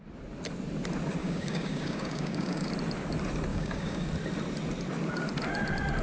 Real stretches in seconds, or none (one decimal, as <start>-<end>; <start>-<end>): 0.0-1.2; 2.7-3.5; 4.1-6.0